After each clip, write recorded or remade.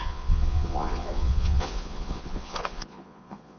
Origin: remade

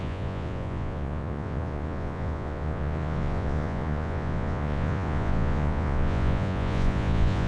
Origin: remade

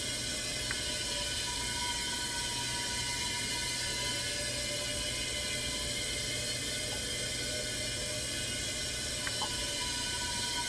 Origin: recorded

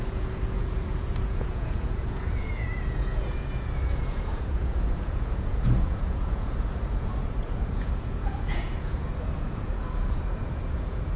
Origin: remade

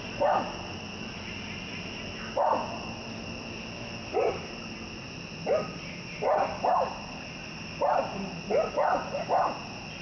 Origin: recorded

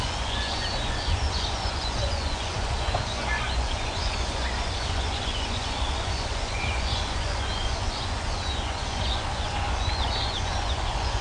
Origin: remade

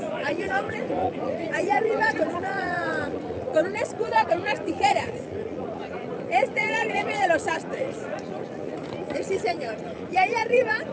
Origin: remade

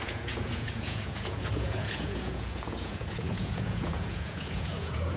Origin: remade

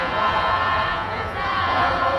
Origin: remade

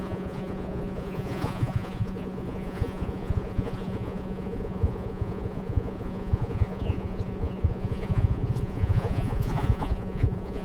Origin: remade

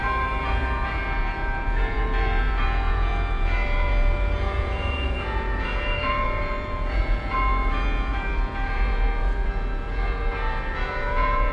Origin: remade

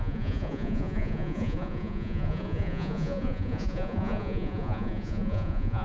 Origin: remade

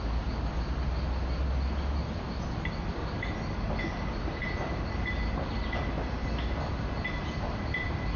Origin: recorded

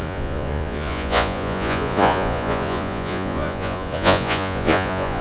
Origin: remade